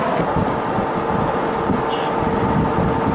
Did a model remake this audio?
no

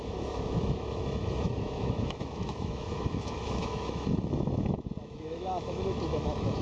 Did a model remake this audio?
yes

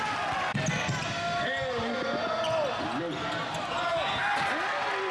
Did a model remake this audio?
no